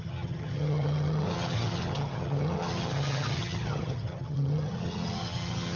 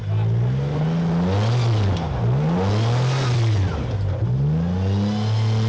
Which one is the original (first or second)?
second